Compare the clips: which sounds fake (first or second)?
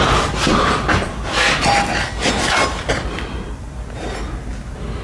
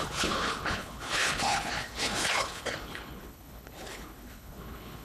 second